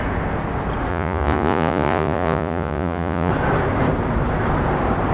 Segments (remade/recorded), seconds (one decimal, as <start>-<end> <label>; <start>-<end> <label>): 0.0-0.9 recorded; 0.9-3.3 remade; 3.3-5.1 recorded